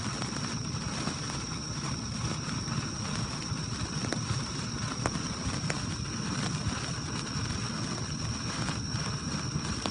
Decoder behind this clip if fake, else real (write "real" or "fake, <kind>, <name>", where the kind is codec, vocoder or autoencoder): real